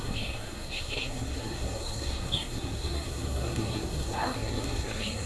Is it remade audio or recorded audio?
remade